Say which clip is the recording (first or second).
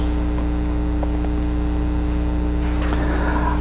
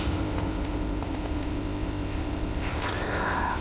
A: first